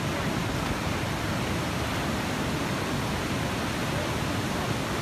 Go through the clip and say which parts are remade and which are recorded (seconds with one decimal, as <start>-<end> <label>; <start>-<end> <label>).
0.0-5.0 recorded